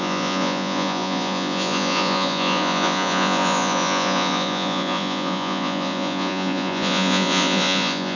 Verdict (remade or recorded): remade